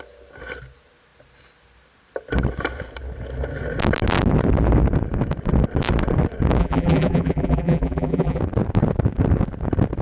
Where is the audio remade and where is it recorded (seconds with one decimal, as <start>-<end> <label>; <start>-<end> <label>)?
0.0-6.6 recorded; 6.6-8.4 remade; 8.4-10.0 recorded